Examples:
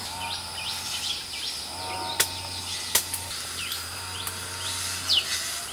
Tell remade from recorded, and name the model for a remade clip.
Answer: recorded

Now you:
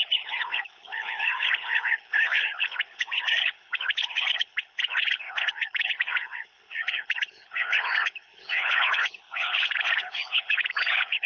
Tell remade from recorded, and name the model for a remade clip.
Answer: remade, codec, HILCodec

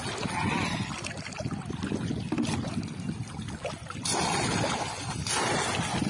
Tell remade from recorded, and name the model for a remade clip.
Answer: recorded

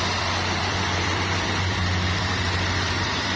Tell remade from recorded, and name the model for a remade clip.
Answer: remade, vocoder, BigVGAN v2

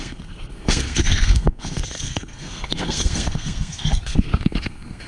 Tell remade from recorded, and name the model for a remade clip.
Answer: remade, codec, SNAC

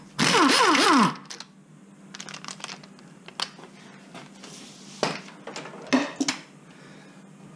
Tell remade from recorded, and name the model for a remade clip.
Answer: recorded